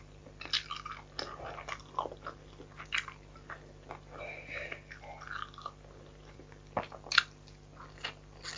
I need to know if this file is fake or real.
real